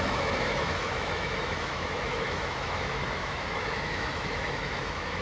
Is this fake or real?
fake